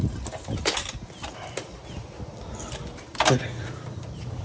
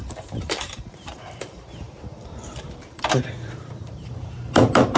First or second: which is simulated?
second